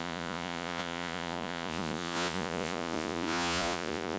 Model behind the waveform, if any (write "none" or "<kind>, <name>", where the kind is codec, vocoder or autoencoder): vocoder, Vocos